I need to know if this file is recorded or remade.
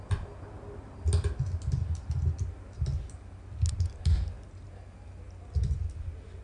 recorded